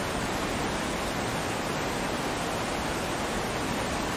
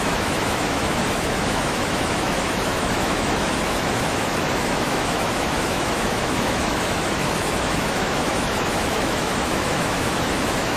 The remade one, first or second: second